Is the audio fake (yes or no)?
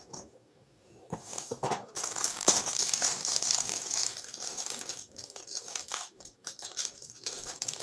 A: yes